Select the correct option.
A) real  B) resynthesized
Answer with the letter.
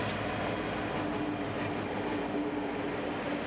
A